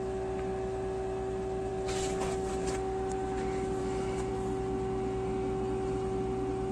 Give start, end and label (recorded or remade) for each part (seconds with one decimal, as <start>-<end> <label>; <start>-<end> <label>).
0.0-3.8 recorded; 3.8-4.3 remade; 4.3-6.7 recorded